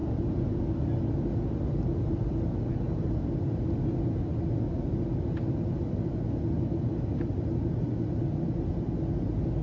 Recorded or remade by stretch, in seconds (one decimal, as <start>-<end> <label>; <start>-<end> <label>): 0.0-0.6 remade; 0.6-9.6 recorded